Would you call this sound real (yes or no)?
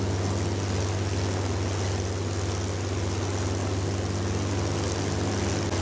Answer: yes